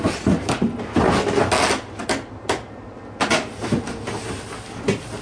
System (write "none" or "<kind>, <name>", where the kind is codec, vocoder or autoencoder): none